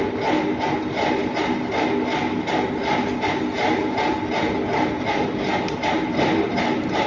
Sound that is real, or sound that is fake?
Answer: real